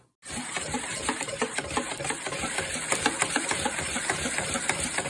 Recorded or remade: recorded